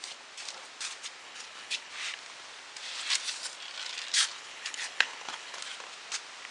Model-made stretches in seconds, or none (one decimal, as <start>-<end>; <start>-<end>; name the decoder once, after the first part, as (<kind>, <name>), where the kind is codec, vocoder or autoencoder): 1.2-1.9 (codec, HILCodec); 4.3-5.6

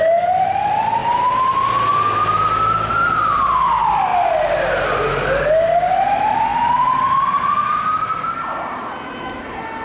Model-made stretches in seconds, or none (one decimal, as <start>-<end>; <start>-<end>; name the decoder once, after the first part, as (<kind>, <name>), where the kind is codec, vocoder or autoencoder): none

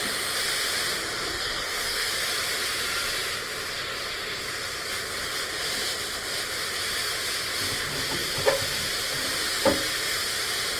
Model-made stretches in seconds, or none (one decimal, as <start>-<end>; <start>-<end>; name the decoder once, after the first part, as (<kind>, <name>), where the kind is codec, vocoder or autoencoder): 1.3-2.1 (codec, SNAC)